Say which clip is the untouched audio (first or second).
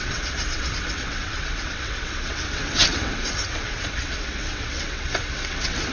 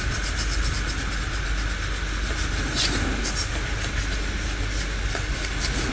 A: second